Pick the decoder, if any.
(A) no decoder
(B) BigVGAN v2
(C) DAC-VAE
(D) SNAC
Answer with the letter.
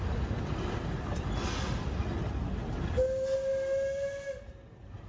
A